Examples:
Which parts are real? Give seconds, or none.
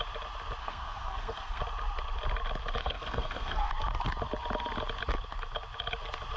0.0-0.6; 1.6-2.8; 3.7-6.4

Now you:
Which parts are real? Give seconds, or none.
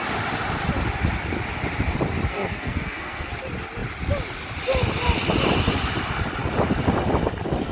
0.0-2.3; 3.3-7.7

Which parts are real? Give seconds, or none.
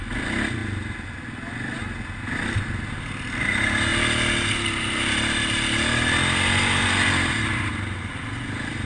0.0-8.8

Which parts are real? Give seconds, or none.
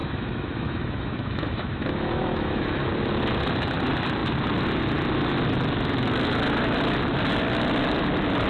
2.9-8.5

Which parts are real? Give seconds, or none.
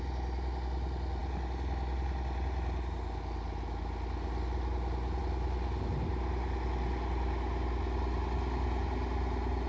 0.0-9.7